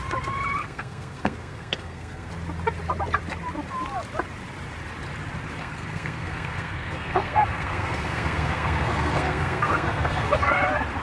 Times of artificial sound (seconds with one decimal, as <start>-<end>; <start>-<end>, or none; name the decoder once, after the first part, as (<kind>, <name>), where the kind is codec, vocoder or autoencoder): 0.6-2.3 (codec, SNAC); 5.6-10.5